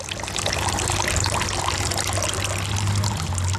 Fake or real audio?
real